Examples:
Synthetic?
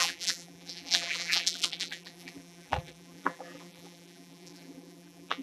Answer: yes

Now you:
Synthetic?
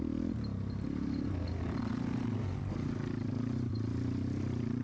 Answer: no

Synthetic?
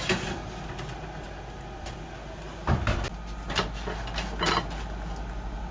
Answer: no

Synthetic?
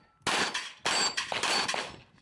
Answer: no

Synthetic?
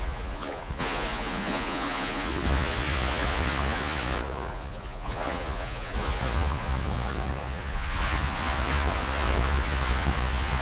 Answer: yes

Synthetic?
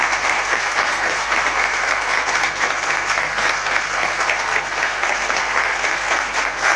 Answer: yes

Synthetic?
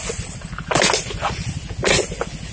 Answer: no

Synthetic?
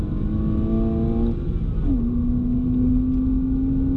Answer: no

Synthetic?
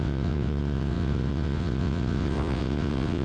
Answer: yes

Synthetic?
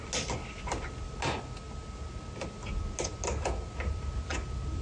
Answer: no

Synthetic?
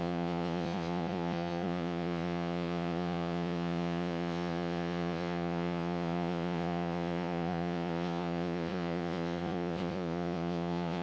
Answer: yes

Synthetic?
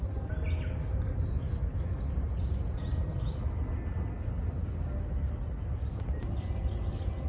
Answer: no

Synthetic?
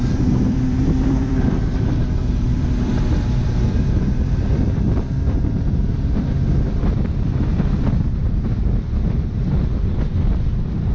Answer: yes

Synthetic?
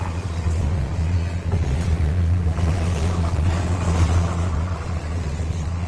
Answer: yes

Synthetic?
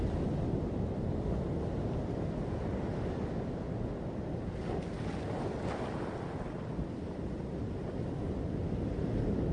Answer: no